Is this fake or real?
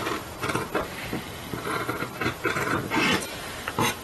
fake